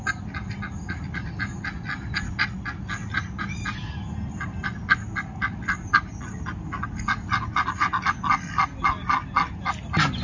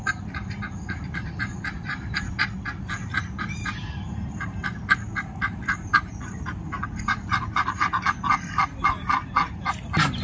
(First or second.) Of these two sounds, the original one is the first